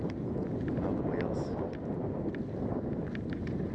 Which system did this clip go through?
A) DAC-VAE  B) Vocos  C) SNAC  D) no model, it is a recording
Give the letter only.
D